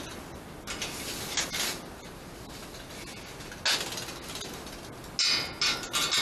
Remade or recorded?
recorded